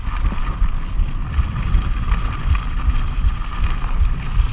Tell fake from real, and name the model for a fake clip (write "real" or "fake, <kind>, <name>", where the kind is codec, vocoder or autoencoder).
real